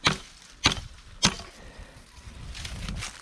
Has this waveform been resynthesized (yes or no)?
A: no